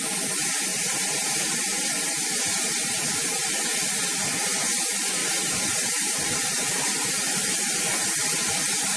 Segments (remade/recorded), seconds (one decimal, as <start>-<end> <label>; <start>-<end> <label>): 0.0-0.7 recorded; 0.7-3.0 remade; 3.0-5.2 recorded; 5.2-7.5 remade; 7.5-9.0 recorded